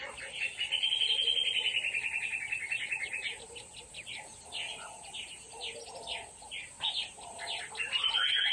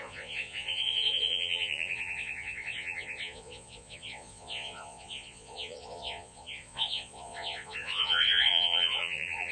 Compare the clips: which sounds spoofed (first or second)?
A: second